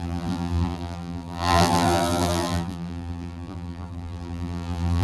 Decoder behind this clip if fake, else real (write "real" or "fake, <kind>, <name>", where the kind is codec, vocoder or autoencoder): fake, vocoder, BigVGAN v2